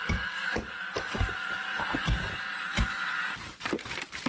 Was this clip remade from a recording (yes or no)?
yes